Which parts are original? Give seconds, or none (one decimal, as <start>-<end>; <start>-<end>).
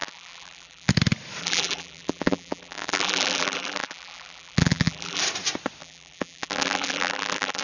0.9-1.4; 5.2-5.8